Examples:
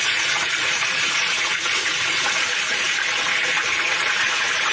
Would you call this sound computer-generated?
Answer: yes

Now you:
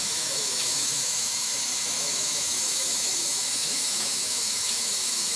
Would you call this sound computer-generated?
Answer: yes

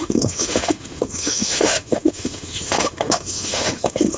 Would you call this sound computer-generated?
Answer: yes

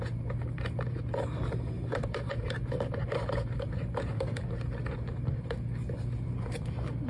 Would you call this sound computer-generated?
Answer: yes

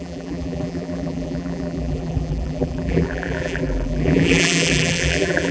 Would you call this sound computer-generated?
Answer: yes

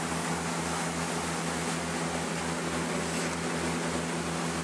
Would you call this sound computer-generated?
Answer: no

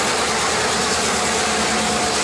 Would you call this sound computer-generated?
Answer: no